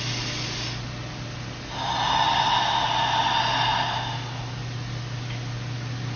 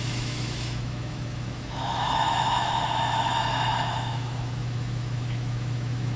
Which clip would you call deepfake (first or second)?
second